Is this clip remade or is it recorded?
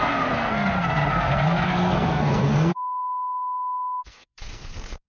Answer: remade